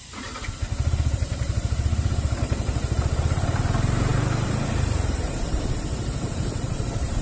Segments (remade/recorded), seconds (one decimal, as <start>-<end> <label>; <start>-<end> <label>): 0.0-7.2 remade